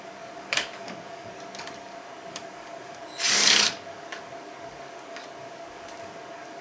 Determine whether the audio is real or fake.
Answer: fake